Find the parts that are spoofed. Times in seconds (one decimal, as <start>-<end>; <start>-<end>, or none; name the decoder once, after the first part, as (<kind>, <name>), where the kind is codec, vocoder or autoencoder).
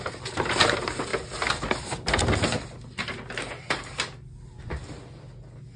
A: none